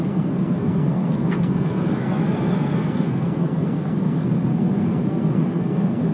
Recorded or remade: remade